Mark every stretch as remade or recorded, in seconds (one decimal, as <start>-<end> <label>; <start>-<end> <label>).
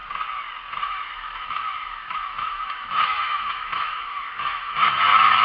0.0-0.7 recorded; 0.7-5.4 remade